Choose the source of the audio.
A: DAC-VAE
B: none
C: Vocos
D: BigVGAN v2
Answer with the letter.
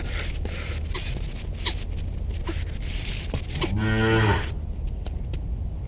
B